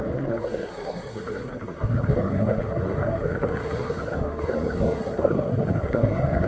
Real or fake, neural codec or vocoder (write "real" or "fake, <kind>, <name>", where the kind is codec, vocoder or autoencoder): fake, codec, SNAC